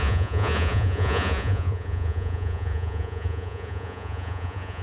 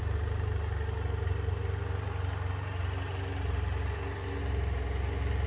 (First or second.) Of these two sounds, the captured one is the second